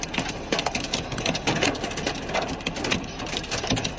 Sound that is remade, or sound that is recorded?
recorded